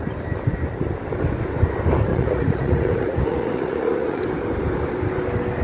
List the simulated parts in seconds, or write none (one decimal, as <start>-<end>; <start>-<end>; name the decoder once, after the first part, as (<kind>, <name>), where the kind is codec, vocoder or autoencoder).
2.1-4.2 (vocoder, Vocos)